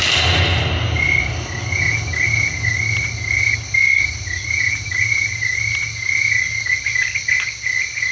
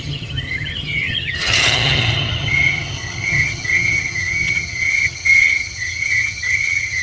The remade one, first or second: second